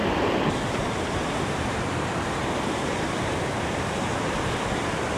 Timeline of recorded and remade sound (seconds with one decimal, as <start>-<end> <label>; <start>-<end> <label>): 0.0-3.1 remade; 3.1-5.2 recorded